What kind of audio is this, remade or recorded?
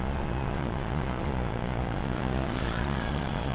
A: remade